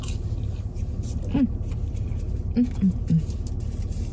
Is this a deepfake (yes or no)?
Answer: no